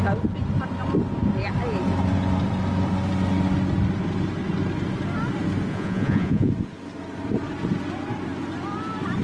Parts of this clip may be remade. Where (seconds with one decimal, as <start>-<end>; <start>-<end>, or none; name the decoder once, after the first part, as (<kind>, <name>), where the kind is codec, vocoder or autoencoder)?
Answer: 5.7-6.5 (vocoder, Vocos)